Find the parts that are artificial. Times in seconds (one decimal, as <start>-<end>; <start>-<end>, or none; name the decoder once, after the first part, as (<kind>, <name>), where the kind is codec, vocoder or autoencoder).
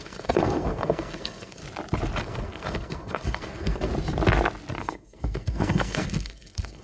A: 0.0-1.6 (codec, SNAC); 2.2-3.9; 4.8-6.8